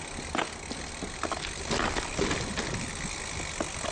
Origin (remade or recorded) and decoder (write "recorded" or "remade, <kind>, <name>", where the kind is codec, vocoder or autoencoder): recorded